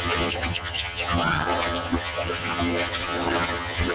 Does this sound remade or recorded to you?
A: remade